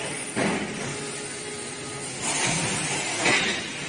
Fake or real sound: real